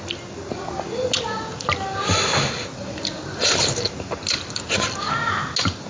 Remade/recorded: recorded